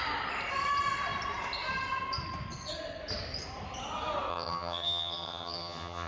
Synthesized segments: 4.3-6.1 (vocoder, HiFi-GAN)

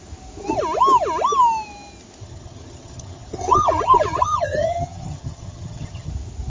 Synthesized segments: 2.2-6.1 (vocoder, HiFi-GAN)

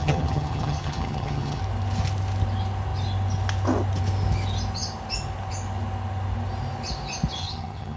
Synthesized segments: 0.0-1.6 (vocoder, HiFi-GAN); 7.4-8.0